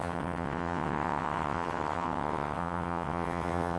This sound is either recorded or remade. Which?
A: remade